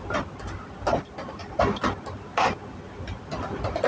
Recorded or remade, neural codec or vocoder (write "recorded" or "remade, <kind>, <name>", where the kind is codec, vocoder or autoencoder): recorded